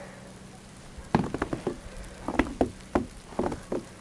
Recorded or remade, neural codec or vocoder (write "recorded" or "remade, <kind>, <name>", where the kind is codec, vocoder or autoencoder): recorded